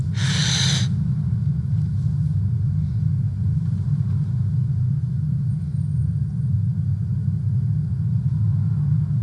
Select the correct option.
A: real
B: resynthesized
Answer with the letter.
A